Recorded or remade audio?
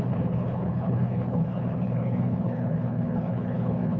remade